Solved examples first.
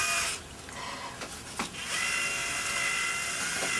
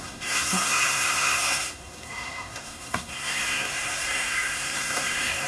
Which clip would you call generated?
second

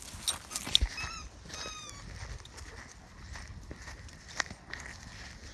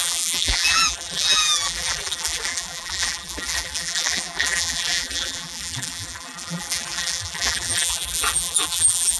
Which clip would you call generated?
second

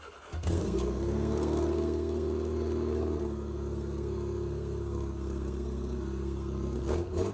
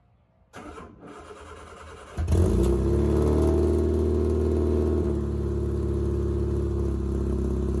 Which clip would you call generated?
first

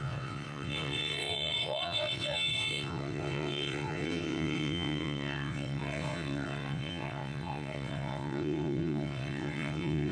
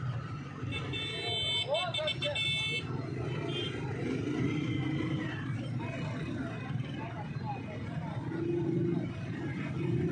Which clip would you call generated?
first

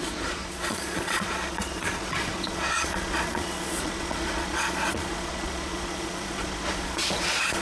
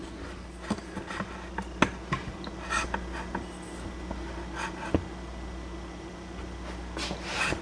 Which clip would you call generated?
first